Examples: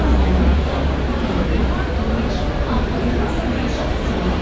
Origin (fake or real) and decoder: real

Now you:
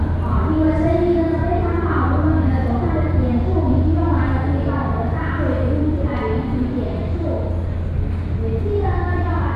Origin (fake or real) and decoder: real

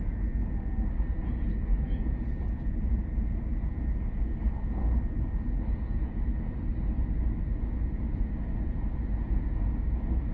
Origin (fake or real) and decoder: real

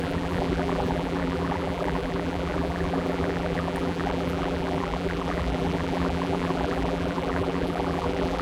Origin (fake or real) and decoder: fake, vocoder, BigVGAN v2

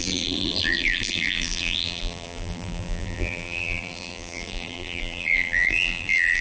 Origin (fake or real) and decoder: fake, vocoder, BigVGAN v2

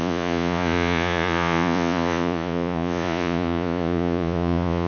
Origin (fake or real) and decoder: fake, vocoder, Vocos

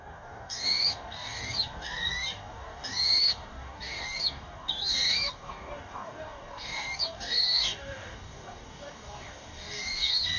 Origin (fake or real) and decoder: fake, codec, DAC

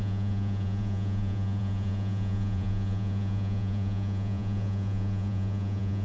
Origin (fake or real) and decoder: fake, vocoder, Vocos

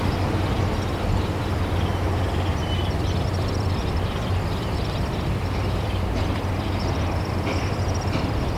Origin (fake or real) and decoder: fake, vocoder, BigVGAN v2